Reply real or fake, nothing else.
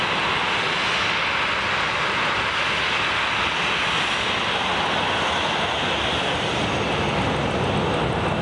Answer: real